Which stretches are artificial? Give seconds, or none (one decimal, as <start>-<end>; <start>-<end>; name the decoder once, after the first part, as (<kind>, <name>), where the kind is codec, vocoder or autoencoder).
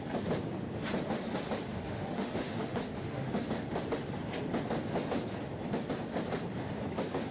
1.7-3.3 (autoencoder, DAC-VAE)